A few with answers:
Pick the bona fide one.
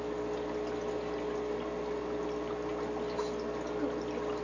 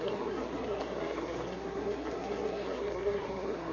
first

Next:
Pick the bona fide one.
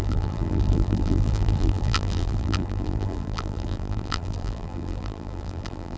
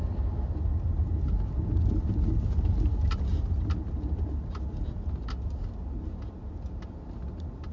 second